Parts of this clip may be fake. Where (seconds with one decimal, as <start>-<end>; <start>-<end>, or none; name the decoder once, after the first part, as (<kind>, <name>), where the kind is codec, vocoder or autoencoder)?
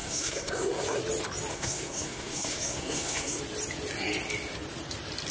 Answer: 0.0-1.0 (codec, SNAC); 1.5-3.4